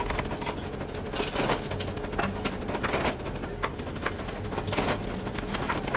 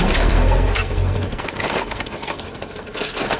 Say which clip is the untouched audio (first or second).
first